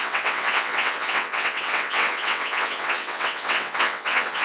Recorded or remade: remade